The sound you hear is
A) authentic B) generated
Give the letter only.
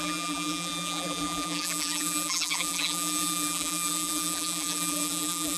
B